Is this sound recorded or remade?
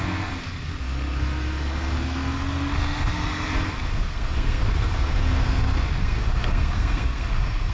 remade